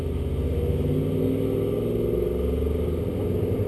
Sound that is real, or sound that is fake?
real